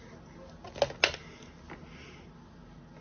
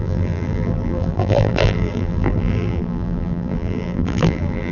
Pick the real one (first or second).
first